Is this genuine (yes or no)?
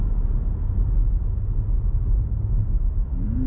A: no